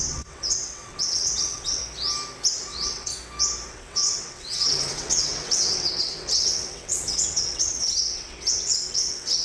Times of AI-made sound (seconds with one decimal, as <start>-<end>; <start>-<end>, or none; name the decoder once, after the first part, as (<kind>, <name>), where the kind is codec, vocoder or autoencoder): 0.0-1.8 (vocoder, WaveNeXt); 2.7-3.1; 3.7-9.4